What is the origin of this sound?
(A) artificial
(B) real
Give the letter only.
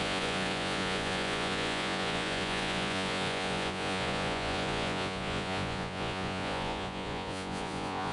A